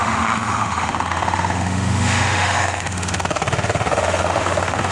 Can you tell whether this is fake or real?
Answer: fake